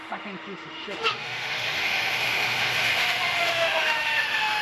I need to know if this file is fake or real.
fake